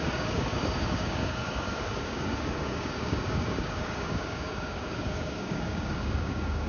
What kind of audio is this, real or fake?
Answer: fake